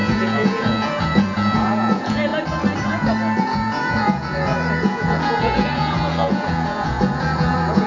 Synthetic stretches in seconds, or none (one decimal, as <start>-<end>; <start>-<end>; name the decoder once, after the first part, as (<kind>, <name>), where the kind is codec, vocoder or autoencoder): 0.0-2.3 (vocoder, Vocos); 3.4-7.9